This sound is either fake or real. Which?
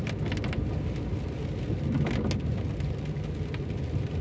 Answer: real